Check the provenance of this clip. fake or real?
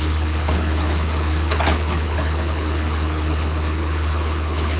fake